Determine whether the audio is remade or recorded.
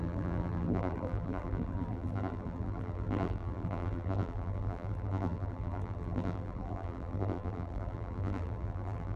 remade